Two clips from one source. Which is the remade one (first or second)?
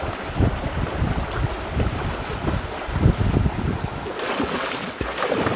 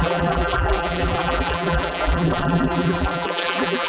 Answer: second